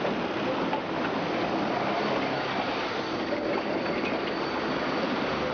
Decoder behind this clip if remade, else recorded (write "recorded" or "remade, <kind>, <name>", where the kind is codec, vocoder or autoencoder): recorded